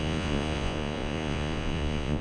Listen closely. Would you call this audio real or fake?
fake